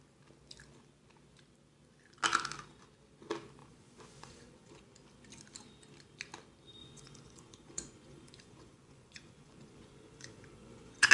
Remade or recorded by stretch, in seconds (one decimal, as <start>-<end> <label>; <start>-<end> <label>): 0.0-3.6 recorded; 3.6-4.8 remade; 4.8-6.8 recorded; 6.8-11.1 remade